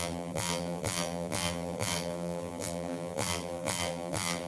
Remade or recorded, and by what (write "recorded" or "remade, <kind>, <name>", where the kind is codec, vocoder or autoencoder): remade, vocoder, BigVGAN v2